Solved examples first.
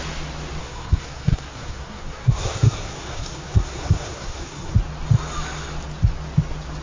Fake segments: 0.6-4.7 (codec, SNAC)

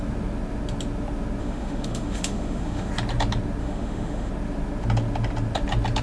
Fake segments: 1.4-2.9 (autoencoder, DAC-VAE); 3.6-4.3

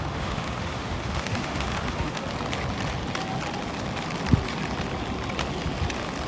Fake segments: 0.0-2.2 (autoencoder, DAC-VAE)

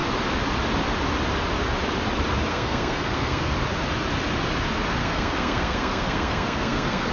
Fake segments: 2.5-3.5 (codec, SNAC); 5.0-7.1

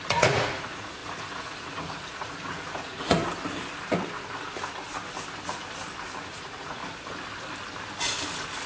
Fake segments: 0.0-3.2 (vocoder, Vocos); 6.2-6.8

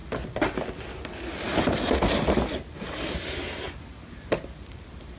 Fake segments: none

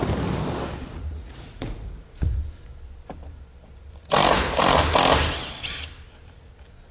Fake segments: 0.9-2.4 (vocoder, Vocos)